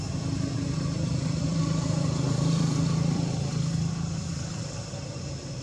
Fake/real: fake